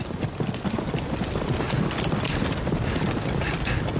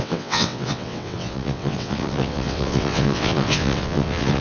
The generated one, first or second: second